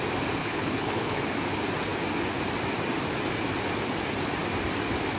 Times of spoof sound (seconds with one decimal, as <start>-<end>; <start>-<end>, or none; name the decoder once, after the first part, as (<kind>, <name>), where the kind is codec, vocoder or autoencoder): 0.4-1.2 (codec, HILCodec)